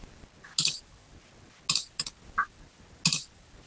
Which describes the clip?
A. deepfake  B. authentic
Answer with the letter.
B